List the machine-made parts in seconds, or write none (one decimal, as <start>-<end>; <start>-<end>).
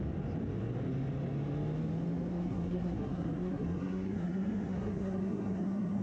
2.3-6.0